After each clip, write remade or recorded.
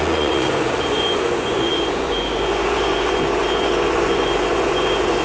remade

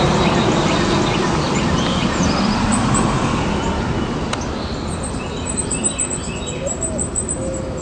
recorded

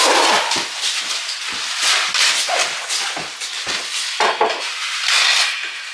recorded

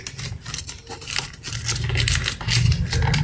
recorded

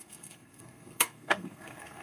remade